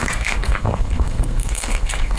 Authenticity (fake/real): fake